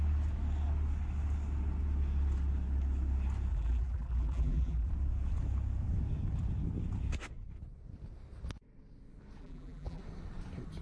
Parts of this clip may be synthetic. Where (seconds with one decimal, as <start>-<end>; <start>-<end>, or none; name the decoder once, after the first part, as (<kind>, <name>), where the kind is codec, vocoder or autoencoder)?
3.5-4.9 (vocoder, BigVGAN v2); 9.4-10.0